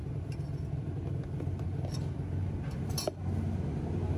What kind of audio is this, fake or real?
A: real